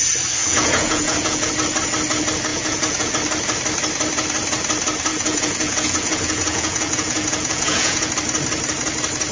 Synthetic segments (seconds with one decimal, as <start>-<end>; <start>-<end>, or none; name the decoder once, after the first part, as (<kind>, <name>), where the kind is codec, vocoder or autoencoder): 0.4-1.5 (vocoder, Vocos); 2.5-3.1; 5.1-8.1